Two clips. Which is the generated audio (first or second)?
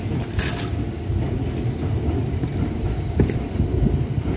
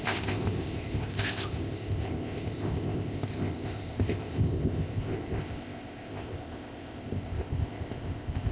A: second